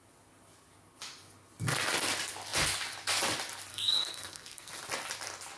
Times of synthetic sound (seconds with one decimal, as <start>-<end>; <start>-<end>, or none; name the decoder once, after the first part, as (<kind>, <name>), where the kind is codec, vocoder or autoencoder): 3.7-4.7 (codec, SNAC)